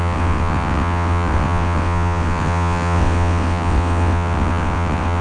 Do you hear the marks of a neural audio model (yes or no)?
yes